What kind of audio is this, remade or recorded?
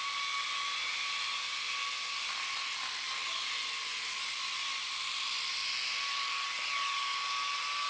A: recorded